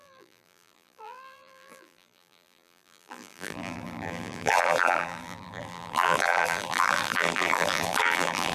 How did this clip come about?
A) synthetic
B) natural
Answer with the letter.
A